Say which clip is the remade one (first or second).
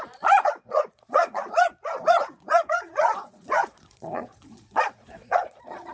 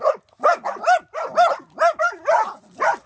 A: first